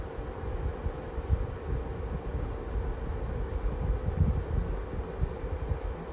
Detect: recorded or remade recorded